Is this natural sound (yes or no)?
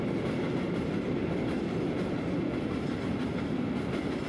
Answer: no